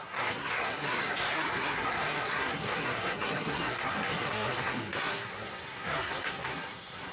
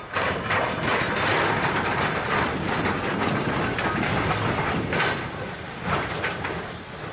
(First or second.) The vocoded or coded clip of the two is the first